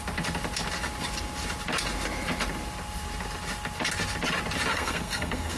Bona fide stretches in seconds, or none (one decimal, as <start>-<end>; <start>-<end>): 0.0-4.7